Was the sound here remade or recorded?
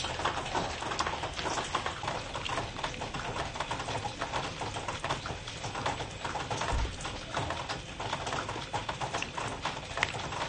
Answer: recorded